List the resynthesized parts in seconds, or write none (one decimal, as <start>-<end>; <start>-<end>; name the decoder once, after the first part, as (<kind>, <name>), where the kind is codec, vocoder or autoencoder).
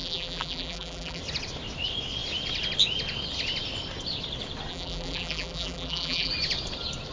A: 0.0-1.2 (vocoder, BigVGAN v2); 4.7-6.3